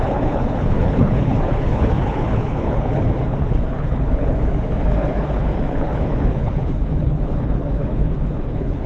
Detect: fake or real fake